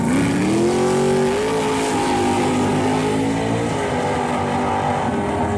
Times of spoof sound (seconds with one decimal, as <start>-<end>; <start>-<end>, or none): none